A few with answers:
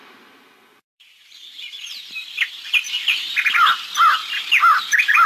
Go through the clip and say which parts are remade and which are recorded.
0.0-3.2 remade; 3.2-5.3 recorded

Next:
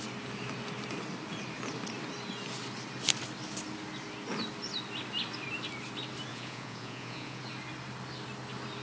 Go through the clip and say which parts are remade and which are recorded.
0.0-6.3 recorded; 6.3-7.4 remade; 7.4-8.8 recorded

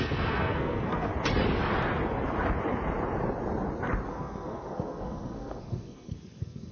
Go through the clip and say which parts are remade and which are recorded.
0.0-1.1 remade; 1.1-4.1 recorded; 4.1-6.7 remade

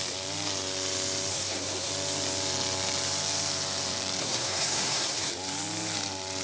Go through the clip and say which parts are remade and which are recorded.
0.0-1.3 recorded; 1.3-1.9 remade; 1.9-4.2 recorded; 4.2-5.3 remade; 5.3-6.4 recorded

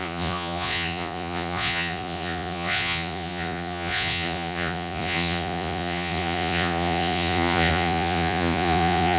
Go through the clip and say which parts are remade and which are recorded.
0.0-9.2 remade

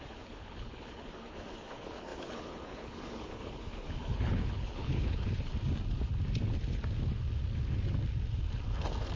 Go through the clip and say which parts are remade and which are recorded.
0.0-5.5 remade; 5.5-9.2 recorded

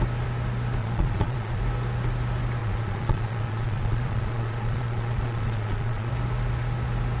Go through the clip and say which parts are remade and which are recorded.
0.0-0.8 recorded; 0.8-1.6 remade; 1.6-2.6 recorded; 2.6-6.1 remade; 6.1-7.2 recorded

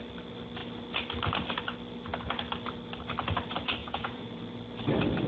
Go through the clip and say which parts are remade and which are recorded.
0.0-3.8 recorded; 3.8-4.4 remade; 4.4-5.3 recorded